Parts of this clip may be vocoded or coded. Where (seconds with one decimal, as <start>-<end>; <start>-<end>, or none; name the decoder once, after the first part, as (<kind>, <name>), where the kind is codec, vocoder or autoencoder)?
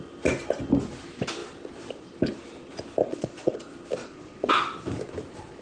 3.0-3.6 (vocoder, Vocos); 4.0-4.5